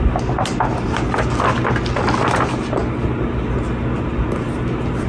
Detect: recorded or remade recorded